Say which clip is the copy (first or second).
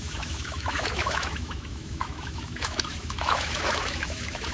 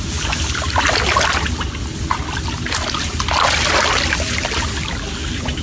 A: first